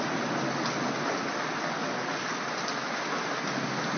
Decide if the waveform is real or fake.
real